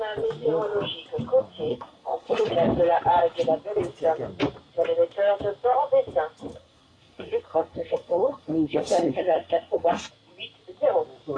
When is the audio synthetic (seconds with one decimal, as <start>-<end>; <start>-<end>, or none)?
1.7-2.5; 6.5-10.1